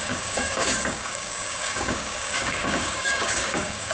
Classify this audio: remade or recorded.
remade